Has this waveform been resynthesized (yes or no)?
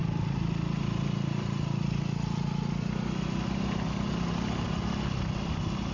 no